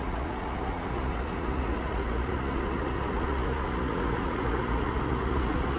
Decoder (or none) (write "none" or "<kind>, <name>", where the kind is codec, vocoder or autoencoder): vocoder, Vocos